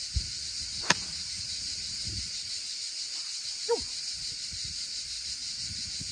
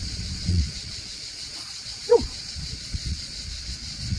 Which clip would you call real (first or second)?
first